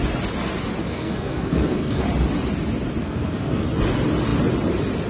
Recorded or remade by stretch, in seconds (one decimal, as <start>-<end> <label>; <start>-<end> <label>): 0.0-0.8 recorded; 0.8-2.0 remade; 2.0-3.0 recorded; 3.0-3.6 remade; 3.6-5.1 recorded